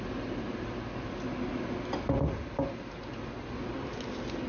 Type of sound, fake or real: real